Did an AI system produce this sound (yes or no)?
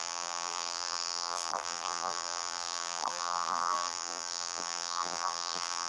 yes